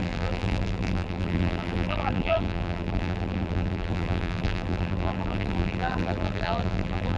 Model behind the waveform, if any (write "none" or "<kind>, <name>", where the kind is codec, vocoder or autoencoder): vocoder, BigVGAN v2